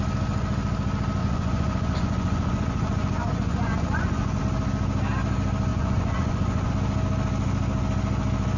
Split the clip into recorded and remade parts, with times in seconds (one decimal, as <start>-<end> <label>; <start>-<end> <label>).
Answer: 0.0-1.2 recorded; 1.2-4.4 remade; 4.4-5.7 recorded; 5.7-6.7 remade; 6.7-8.6 recorded